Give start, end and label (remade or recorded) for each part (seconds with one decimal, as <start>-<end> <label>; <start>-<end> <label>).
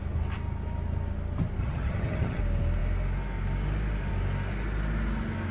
0.0-1.6 recorded; 1.6-2.4 remade; 2.4-5.5 recorded